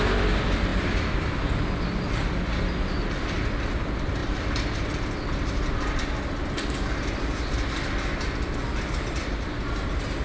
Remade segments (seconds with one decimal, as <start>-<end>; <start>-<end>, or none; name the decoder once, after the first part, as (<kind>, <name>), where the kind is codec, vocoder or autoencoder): none